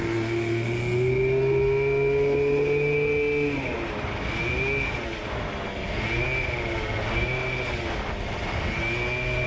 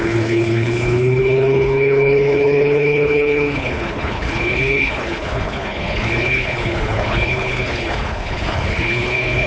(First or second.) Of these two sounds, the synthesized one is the second